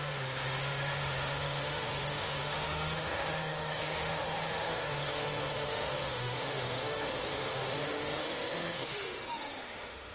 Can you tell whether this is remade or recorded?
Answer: remade